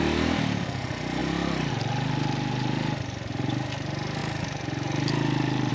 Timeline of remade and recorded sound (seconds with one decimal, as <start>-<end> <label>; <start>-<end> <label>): 0.0-5.7 recorded